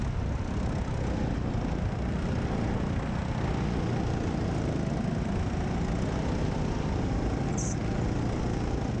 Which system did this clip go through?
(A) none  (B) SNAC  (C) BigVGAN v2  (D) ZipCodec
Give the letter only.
A